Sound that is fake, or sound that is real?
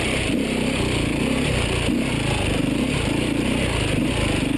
real